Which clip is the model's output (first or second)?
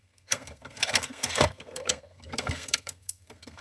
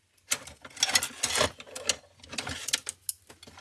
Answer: first